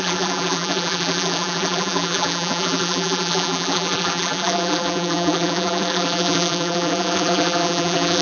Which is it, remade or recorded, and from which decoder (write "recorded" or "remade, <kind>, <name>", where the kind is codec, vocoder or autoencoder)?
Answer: remade, vocoder, BigVGAN v2